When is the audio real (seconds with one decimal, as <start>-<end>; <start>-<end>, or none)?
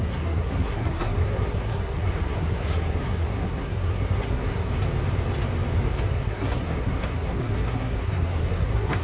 4.7-6.1